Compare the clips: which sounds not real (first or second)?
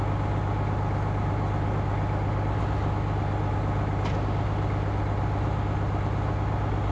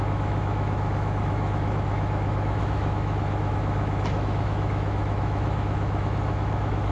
second